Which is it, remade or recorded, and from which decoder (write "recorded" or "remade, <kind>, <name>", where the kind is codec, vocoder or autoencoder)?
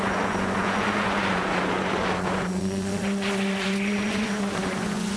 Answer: remade, vocoder, Vocos